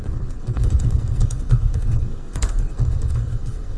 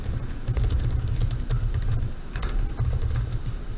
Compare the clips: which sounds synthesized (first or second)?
first